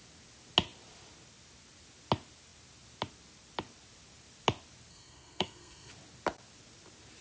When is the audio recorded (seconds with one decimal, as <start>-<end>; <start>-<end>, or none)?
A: 0.0-4.9; 5.9-7.2